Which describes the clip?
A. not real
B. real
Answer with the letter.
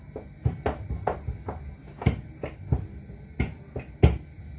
B